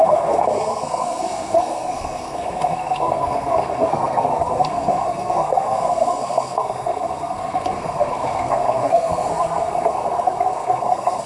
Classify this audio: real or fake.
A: fake